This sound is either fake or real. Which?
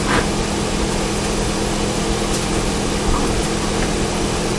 real